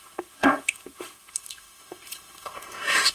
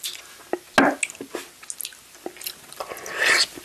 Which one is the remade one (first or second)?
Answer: first